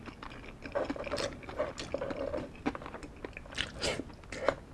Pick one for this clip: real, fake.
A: real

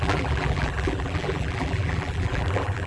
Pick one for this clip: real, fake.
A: fake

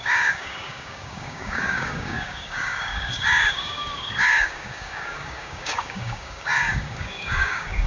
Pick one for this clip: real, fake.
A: fake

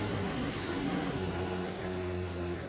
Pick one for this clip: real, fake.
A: fake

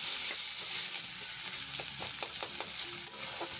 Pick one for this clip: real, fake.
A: real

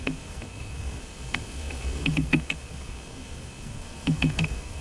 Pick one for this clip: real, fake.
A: fake